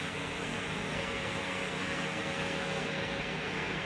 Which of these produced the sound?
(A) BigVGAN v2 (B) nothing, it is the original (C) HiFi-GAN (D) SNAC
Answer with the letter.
D